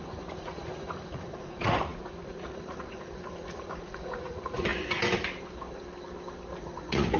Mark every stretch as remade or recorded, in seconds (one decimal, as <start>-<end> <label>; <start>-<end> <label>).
0.0-4.7 remade; 4.7-6.6 recorded; 6.6-7.2 remade